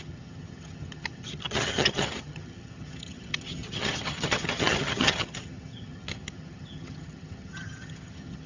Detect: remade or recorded remade